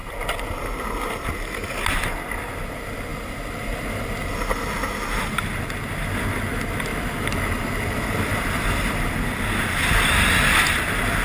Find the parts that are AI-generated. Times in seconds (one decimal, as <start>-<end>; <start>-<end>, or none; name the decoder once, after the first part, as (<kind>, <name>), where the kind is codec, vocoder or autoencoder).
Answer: 6.9-7.5 (vocoder, BigVGAN v2); 8.3-8.9